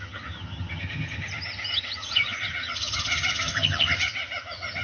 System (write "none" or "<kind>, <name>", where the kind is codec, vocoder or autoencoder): vocoder, HiFi-GAN